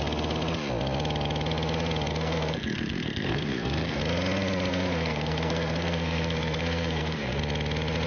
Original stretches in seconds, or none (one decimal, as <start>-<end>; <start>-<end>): 0.0-2.1; 4.0-4.7; 7.4-8.1

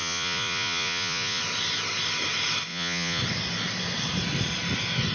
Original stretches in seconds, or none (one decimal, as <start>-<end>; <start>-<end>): 1.4-2.7; 3.2-5.1

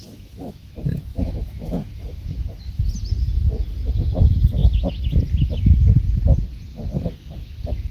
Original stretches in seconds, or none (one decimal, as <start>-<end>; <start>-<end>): 0.7-1.1; 2.8-6.7

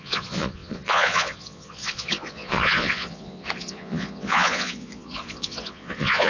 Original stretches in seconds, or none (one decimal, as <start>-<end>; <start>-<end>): none

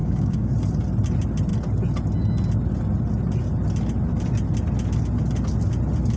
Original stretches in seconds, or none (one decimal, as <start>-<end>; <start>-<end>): 0.5-6.2